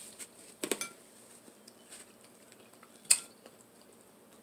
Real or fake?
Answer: real